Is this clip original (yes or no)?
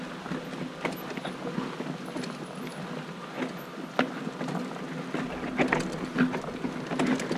yes